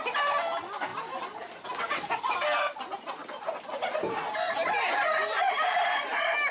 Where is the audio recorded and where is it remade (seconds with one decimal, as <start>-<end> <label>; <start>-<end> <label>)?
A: 0.0-6.5 recorded